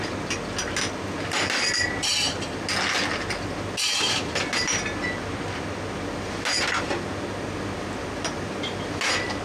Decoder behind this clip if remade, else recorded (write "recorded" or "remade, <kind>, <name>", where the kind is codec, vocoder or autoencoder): recorded